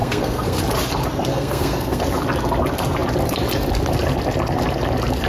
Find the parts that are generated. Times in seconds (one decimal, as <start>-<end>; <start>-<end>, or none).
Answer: 0.0-0.6; 1.3-2.0